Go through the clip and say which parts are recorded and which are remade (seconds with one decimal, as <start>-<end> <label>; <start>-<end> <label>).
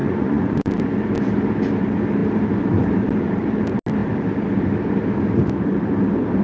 0.0-0.7 remade; 0.7-6.4 recorded